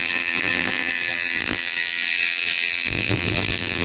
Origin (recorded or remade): remade